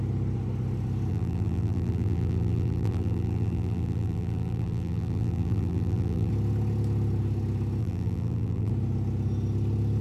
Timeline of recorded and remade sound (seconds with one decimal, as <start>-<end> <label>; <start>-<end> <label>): 0.0-1.1 recorded; 1.1-6.3 remade; 6.3-7.8 recorded; 7.8-8.7 remade; 8.7-10.0 recorded